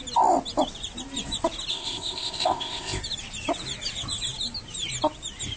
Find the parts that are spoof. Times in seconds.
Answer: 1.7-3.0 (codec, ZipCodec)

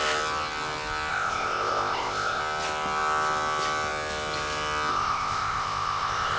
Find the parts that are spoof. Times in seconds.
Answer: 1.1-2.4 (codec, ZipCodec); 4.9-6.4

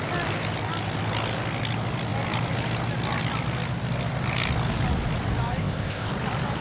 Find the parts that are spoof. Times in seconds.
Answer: 5.6-6.1 (codec, ZipCodec)

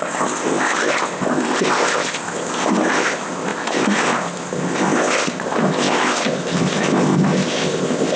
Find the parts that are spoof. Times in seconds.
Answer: 0.0-8.2 (codec, ZipCodec)

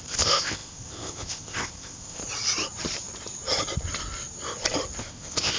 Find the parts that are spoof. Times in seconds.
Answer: 0.0-2.2 (codec, ZipCodec); 5.0-5.6

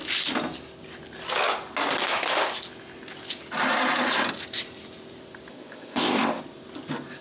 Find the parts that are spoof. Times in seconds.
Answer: 5.5-6.4 (codec, ZipCodec)

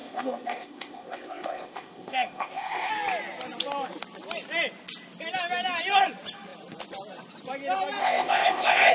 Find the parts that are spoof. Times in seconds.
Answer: 0.0-2.9 (codec, ZipCodec); 8.0-8.9

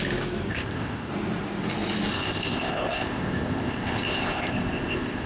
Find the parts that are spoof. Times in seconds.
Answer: 0.5-1.1 (codec, ZipCodec); 2.1-5.3